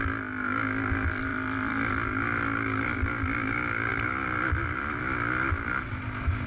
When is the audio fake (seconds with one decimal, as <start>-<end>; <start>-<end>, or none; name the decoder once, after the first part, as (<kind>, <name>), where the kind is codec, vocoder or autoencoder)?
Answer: 1.3-1.9 (vocoder, BigVGAN v2); 3.9-5.0